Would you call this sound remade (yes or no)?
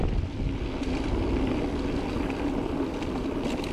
no